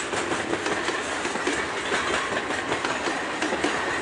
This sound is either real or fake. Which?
real